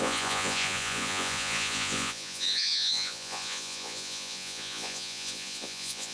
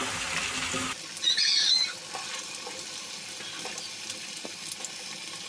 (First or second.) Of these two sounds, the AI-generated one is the first